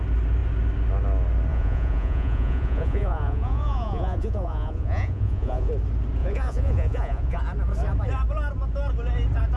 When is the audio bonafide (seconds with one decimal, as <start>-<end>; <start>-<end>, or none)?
0.0-1.5; 5.7-6.2; 7.4-9.6